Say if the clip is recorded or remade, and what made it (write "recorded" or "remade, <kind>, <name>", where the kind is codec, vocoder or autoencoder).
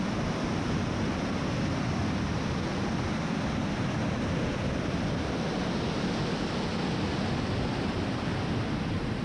recorded